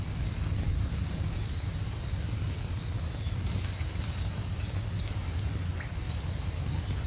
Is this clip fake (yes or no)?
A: no